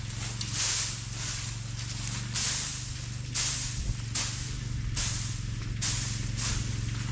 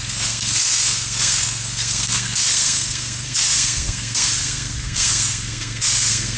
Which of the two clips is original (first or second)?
first